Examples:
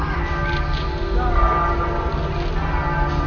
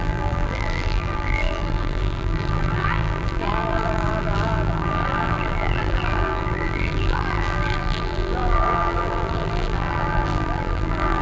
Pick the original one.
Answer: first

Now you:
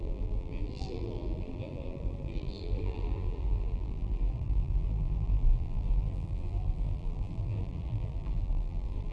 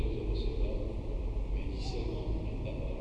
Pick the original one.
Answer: second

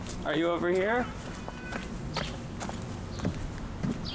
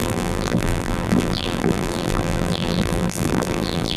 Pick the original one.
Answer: first